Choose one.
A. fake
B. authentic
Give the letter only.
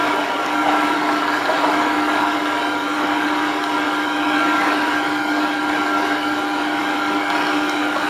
A